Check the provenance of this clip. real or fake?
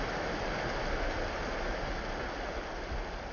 real